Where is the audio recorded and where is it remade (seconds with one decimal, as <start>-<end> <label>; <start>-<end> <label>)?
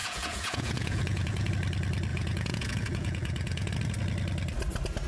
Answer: 0.0-1.5 remade; 1.5-2.1 recorded; 2.1-3.7 remade; 3.7-5.1 recorded